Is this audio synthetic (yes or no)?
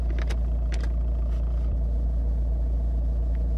no